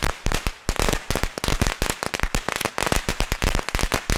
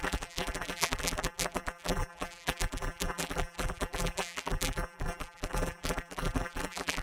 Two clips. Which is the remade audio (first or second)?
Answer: second